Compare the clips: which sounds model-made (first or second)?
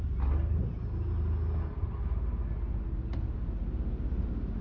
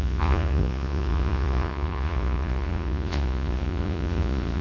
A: second